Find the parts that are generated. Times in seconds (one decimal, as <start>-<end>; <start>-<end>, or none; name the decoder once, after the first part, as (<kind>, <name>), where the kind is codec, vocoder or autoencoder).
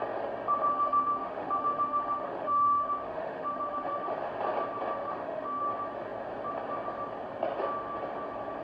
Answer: 0.7-4.1 (autoencoder, DAC-VAE); 5.0-5.6